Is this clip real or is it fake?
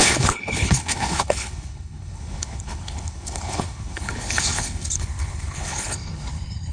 fake